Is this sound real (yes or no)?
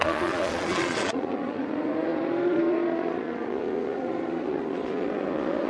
no